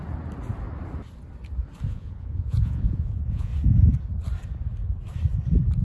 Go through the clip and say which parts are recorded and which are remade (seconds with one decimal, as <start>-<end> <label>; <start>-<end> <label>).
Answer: 0.0-1.9 recorded; 1.9-3.5 remade; 3.5-5.8 recorded